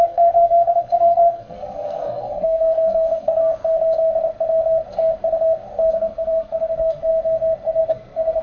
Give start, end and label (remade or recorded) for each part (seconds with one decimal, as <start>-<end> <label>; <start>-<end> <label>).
0.0-3.4 remade; 3.4-5.9 recorded; 5.9-7.1 remade; 7.1-7.8 recorded; 7.8-8.4 remade